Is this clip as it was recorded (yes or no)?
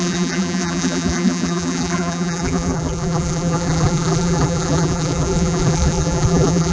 no